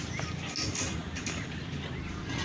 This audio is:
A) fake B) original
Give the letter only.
B